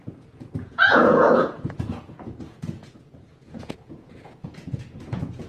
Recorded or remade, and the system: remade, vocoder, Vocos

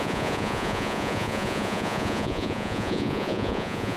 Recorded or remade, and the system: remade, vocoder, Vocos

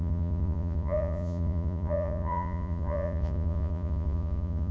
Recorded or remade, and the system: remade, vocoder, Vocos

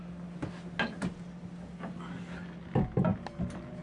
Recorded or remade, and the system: recorded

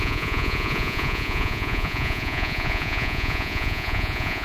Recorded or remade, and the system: remade, vocoder, Vocos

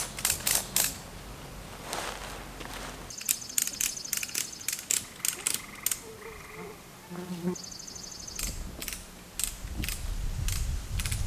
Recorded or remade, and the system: recorded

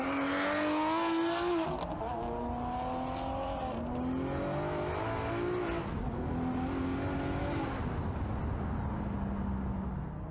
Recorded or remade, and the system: recorded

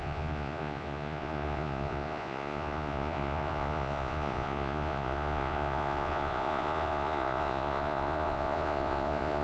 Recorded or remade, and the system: remade, vocoder, Vocos